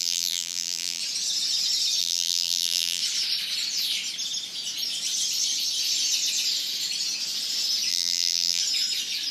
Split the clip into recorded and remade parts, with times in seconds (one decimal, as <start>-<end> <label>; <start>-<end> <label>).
0.0-1.0 remade; 1.0-2.0 recorded; 2.0-3.0 remade; 3.0-7.9 recorded; 7.9-8.6 remade; 8.6-9.3 recorded